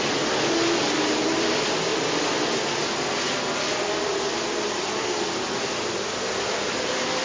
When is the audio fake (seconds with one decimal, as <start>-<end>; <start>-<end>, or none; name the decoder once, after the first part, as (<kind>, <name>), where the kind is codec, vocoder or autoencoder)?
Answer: none